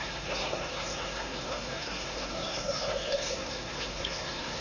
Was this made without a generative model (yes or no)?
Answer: no